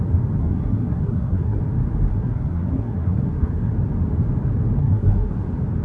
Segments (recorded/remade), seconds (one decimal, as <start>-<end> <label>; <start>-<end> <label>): 0.0-0.4 recorded; 0.4-1.6 remade; 1.6-2.1 recorded; 2.1-3.7 remade; 3.7-4.8 recorded; 4.8-5.3 remade; 5.3-5.8 recorded